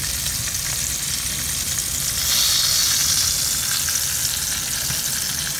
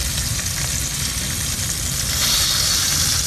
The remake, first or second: second